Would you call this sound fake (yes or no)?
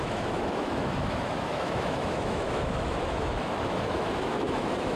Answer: yes